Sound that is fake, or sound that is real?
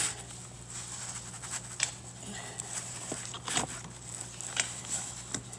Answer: real